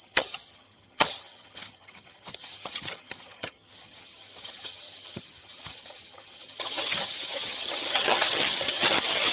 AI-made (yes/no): yes